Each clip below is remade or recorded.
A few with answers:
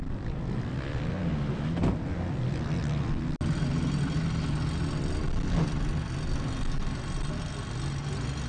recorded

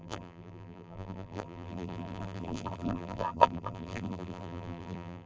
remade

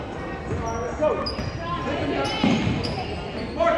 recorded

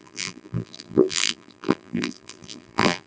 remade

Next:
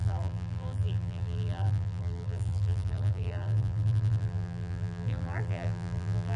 remade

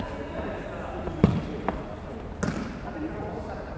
recorded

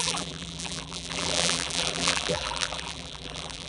remade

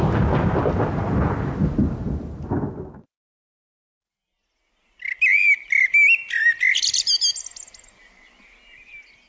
recorded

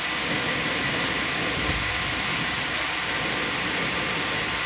remade